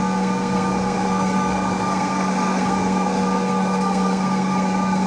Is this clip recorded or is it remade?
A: remade